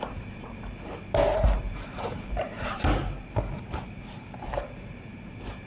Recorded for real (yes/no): no